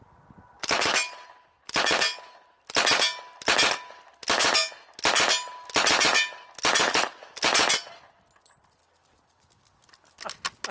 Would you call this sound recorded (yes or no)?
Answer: yes